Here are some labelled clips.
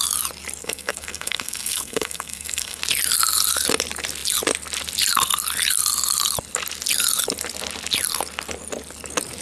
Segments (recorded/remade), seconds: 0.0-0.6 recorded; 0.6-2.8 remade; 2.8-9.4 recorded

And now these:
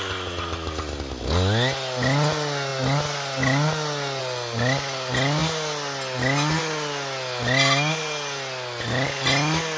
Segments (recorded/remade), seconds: 0.0-9.8 recorded

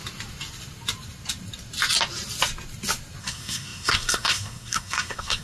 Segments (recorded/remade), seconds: 0.0-3.2 recorded; 3.2-5.4 remade